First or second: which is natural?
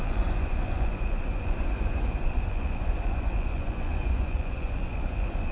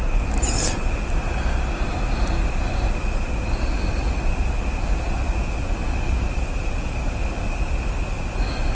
second